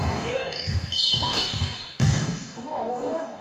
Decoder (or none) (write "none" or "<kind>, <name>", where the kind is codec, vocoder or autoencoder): codec, DAC